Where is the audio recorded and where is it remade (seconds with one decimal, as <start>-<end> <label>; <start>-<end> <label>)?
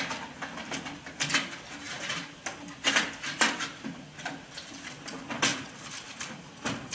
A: 0.0-6.9 recorded